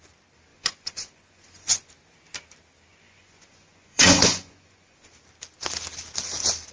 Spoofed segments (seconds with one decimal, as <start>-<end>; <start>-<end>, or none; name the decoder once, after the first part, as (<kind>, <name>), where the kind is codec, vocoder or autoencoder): 0.5-1.9 (vocoder, Vocos); 2.9-5.1